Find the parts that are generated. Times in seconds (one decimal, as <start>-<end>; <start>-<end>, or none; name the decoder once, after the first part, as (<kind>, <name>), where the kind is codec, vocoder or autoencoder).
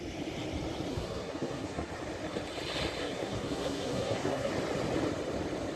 0.9-1.9 (codec, SNAC); 3.0-4.5